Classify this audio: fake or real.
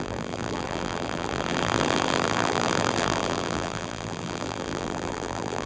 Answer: fake